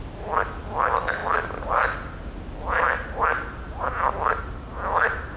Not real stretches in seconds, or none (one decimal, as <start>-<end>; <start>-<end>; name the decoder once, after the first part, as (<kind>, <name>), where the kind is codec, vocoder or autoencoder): none